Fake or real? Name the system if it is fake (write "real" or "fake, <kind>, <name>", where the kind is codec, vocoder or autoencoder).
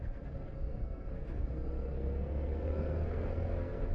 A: fake, codec, SNAC